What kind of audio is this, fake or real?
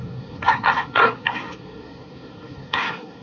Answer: fake